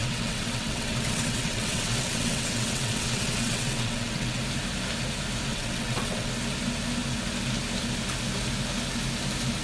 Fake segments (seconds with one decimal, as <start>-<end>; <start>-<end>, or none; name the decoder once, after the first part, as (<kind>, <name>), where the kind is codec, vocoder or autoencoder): 0.0-4.4 (vocoder, WaveNeXt); 5.5-6.3

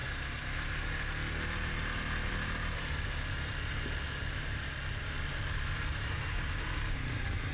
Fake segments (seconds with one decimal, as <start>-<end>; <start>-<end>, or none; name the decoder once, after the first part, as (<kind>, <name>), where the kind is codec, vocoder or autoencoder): none